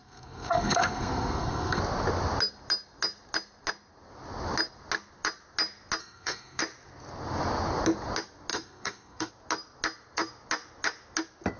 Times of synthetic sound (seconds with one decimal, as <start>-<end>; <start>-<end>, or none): 0.0-1.8; 6.0-6.6; 8.5-9.3